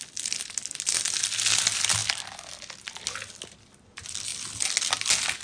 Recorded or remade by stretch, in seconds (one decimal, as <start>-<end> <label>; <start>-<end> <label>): 0.0-5.4 recorded